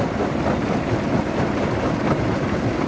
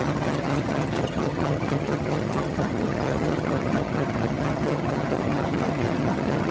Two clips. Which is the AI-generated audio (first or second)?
second